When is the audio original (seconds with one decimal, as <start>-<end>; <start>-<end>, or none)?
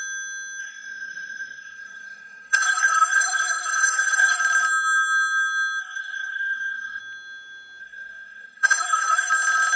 0.0-0.6; 4.4-5.8; 7.0-7.8; 9.3-9.8